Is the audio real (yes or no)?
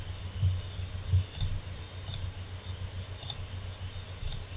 yes